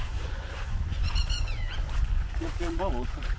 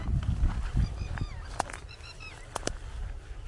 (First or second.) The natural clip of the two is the second